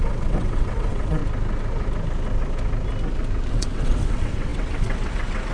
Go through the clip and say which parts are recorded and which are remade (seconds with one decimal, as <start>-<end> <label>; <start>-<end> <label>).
0.0-1.2 remade; 1.2-3.5 recorded; 3.5-5.5 remade

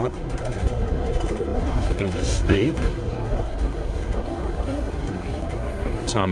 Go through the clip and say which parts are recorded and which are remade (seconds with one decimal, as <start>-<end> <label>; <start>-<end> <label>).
0.0-6.3 remade

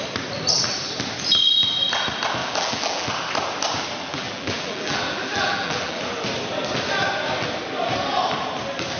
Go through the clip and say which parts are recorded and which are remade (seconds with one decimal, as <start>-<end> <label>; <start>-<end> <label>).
0.0-2.4 recorded; 2.4-3.1 remade; 3.1-4.1 recorded; 4.1-6.0 remade; 6.0-9.0 recorded

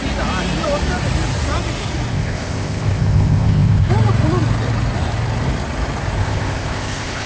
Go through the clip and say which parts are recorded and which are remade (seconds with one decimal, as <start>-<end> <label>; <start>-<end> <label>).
0.0-2.1 recorded; 2.1-3.9 remade; 3.9-6.2 recorded; 6.2-7.3 remade

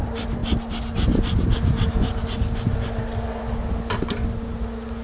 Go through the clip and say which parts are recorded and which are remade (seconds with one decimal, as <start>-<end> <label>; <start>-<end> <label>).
0.0-5.0 recorded

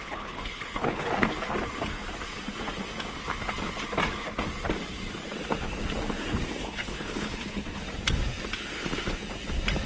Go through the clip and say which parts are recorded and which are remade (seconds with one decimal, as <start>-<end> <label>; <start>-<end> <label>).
0.0-1.1 remade; 1.1-6.6 recorded; 6.6-7.8 remade; 7.8-9.9 recorded

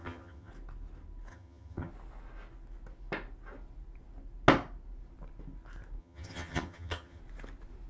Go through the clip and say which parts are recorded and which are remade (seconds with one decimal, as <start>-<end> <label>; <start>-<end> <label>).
0.0-0.5 remade; 0.5-1.3 recorded; 1.3-1.9 remade; 1.9-6.0 recorded; 6.0-7.2 remade; 7.2-7.9 recorded